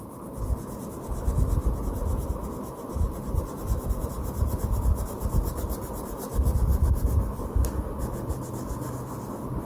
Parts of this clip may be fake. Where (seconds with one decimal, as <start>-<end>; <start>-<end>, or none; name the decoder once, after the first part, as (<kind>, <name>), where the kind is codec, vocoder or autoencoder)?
none